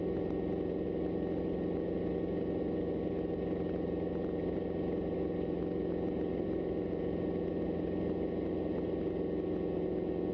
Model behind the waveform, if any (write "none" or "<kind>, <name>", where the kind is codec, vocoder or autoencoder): none